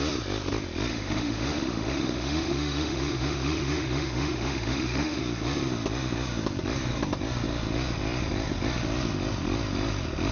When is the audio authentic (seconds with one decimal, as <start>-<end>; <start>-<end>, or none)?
0.0-0.9; 5.2-10.3